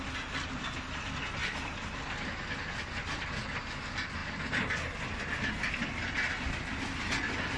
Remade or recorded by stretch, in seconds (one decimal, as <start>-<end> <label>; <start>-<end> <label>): 0.0-7.6 recorded

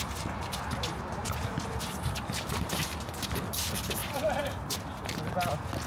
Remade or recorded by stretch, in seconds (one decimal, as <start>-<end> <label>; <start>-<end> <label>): 0.0-1.2 recorded; 1.2-2.8 remade; 2.8-4.0 recorded; 4.0-5.0 remade; 5.0-5.9 recorded

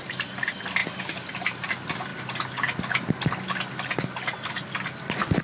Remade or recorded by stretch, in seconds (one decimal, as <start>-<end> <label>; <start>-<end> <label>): 0.0-5.4 recorded

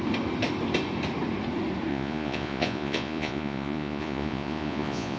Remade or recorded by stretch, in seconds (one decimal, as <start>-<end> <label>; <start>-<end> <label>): 0.0-1.9 recorded; 1.9-5.2 remade